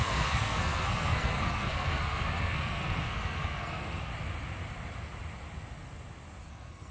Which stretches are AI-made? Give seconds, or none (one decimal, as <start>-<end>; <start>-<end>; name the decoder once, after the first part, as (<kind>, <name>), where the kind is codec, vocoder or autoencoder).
0.0-4.1 (codec, SNAC); 6.5-6.9